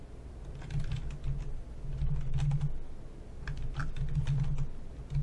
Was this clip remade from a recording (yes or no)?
no